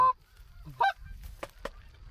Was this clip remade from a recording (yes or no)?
no